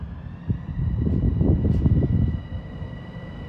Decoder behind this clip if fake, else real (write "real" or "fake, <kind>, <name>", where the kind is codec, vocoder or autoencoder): real